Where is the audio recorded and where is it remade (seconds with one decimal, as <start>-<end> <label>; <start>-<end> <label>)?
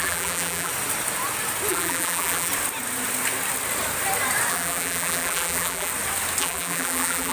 0.0-0.7 remade; 0.7-1.7 recorded; 1.7-2.5 remade; 2.5-4.5 recorded; 4.5-5.9 remade; 5.9-6.4 recorded; 6.4-7.3 remade